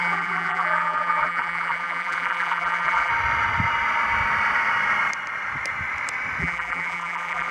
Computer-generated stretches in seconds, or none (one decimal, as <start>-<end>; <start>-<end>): 0.0-3.1; 6.4-7.5